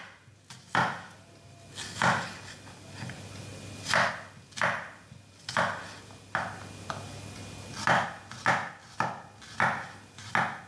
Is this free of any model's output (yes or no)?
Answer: yes